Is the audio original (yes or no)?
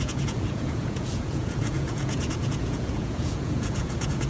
no